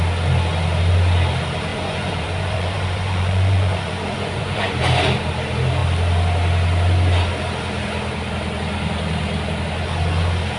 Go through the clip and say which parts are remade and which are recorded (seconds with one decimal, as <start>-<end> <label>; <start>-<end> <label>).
0.0-1.7 recorded; 1.7-4.7 remade; 4.7-10.6 recorded